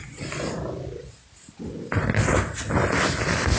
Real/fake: real